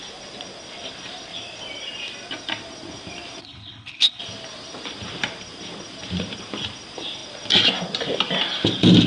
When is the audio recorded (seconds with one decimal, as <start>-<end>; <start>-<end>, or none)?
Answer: 0.0-3.4; 4.2-9.1